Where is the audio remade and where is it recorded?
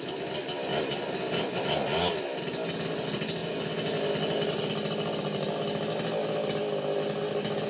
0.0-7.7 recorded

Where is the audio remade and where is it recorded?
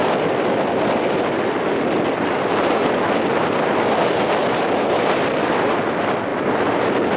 0.0-7.2 recorded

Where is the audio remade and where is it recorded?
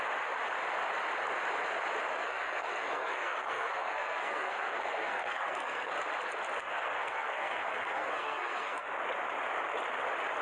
0.0-2.2 recorded; 2.2-5.9 remade; 5.9-6.6 recorded; 6.6-8.9 remade; 8.9-10.4 recorded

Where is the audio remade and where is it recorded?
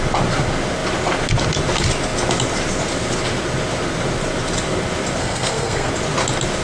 0.0-5.2 recorded; 5.2-5.9 remade; 5.9-6.6 recorded